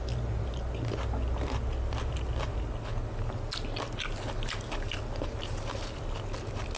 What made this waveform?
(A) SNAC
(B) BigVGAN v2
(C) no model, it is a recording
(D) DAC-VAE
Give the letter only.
C